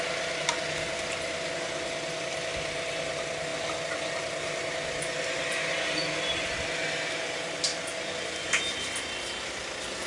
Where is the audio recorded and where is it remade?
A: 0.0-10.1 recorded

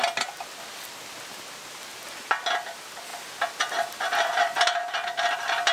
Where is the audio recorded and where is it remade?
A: 0.0-5.7 recorded

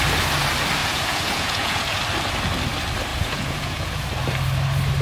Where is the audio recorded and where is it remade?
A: 0.0-0.8 recorded; 0.8-2.0 remade; 2.0-3.1 recorded; 3.1-4.0 remade; 4.0-5.0 recorded

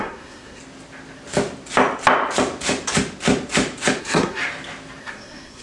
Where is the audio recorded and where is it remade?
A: 0.0-0.6 remade; 0.6-4.0 recorded; 4.0-4.4 remade; 4.4-5.0 recorded; 5.0-5.6 remade

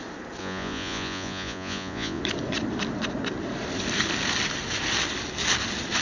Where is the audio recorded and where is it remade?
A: 0.0-0.4 recorded; 0.4-2.2 remade; 2.2-6.0 recorded

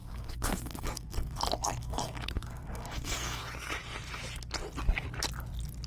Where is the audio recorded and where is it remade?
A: 0.0-3.4 remade; 3.4-5.9 recorded

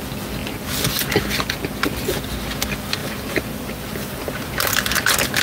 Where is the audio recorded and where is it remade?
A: 0.0-3.0 recorded; 3.0-4.7 remade; 4.7-5.4 recorded

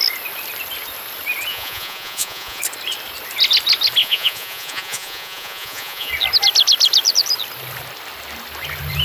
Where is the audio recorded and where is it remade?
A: 0.0-1.5 recorded; 1.5-2.6 remade; 2.6-4.0 recorded; 4.0-6.1 remade; 6.1-9.0 recorded